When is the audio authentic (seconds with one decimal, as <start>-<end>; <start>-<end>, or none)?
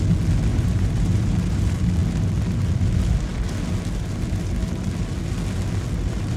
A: 0.0-0.5; 1.6-6.4